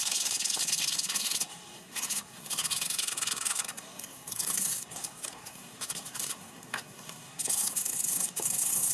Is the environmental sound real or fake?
fake